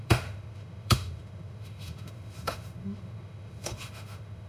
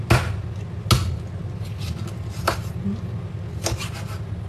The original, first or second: second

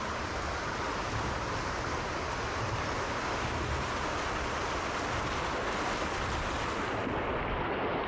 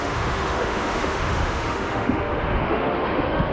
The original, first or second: first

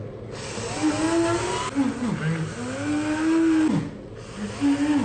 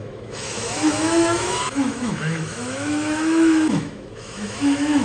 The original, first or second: first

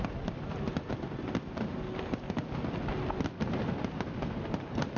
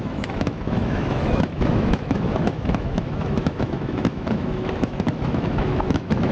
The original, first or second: first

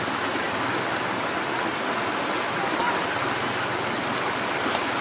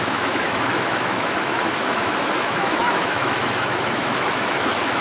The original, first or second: first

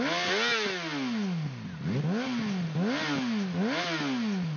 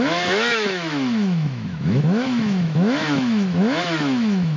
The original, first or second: first